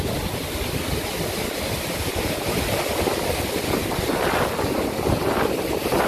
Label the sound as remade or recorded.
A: recorded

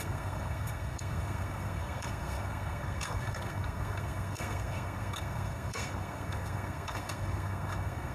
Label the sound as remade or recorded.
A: remade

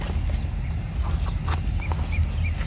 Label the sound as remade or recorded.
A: recorded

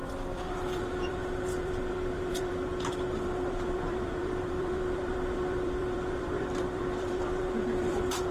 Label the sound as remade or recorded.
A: remade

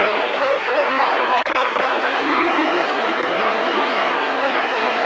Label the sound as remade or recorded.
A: remade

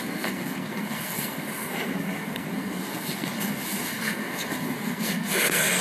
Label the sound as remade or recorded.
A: remade